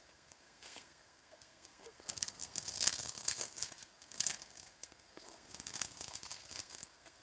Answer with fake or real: fake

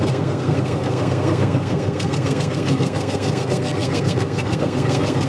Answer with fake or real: fake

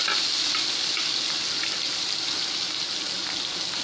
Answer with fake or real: real